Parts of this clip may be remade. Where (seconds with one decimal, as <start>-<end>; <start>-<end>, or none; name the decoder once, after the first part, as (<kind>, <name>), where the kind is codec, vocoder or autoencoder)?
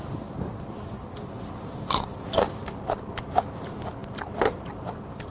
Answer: none